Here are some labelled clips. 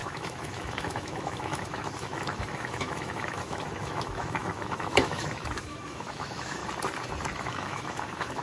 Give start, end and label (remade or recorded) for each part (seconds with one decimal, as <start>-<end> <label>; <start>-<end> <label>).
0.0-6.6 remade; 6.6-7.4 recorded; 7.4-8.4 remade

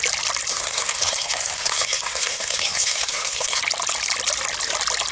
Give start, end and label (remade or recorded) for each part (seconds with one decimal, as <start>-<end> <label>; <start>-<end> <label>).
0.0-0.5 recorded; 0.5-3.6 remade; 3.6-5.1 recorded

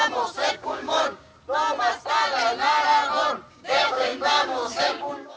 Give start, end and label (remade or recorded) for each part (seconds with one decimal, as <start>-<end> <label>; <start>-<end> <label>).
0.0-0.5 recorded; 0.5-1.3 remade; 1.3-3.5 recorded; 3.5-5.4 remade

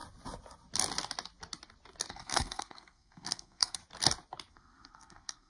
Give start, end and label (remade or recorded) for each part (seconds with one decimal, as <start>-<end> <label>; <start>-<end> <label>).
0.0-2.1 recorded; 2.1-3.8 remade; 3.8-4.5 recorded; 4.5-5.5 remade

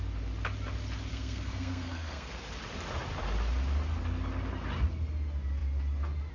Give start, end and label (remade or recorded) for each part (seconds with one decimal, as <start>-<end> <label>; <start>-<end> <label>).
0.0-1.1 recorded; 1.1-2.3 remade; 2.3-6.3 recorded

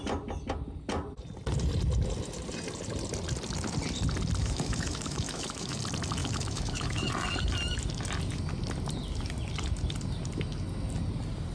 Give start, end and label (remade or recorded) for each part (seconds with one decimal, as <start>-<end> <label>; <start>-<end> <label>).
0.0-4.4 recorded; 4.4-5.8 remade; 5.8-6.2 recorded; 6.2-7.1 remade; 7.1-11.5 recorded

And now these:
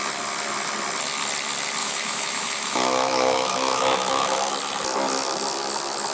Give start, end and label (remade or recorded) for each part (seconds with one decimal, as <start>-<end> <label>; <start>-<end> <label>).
0.0-1.8 recorded; 1.8-4.5 remade; 4.5-6.1 recorded

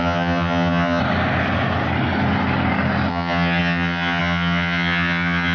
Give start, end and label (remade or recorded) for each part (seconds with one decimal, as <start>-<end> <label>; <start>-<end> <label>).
0.0-1.0 remade; 1.0-3.1 recorded; 3.1-5.5 remade